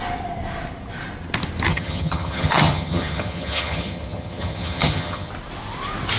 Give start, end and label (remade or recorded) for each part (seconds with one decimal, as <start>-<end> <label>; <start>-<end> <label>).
0.0-1.7 recorded; 1.7-5.3 remade; 5.3-6.2 recorded